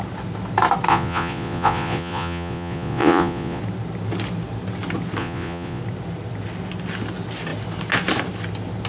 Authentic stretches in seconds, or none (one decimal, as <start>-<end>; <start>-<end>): 0.0-0.9; 3.6-5.2; 5.8-8.9

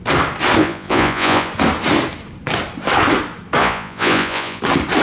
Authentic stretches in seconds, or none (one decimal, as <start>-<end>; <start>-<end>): 0.0-0.6; 1.5-3.6; 4.6-5.0

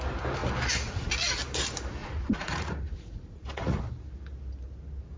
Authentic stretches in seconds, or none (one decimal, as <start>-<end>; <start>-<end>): 0.0-2.0; 3.8-5.2

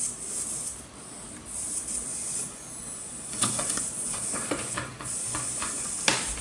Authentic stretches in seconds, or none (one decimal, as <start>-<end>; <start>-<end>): 0.0-2.1; 5.9-6.4